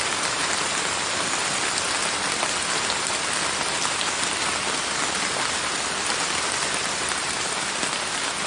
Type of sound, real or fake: real